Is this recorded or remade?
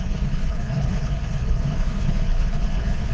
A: remade